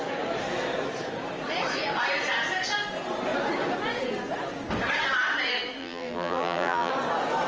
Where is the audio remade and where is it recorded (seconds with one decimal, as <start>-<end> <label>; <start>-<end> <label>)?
0.0-5.8 recorded; 5.8-6.9 remade; 6.9-7.5 recorded